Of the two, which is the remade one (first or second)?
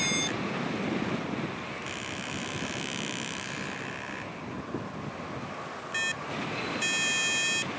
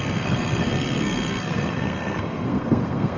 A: second